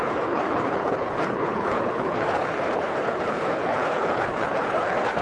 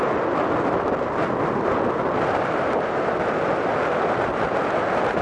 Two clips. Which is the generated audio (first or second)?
first